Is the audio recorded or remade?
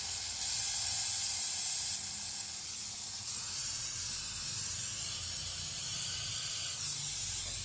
recorded